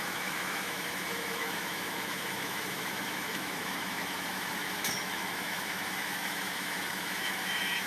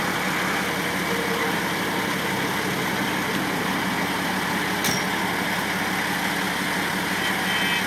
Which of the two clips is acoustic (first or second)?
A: second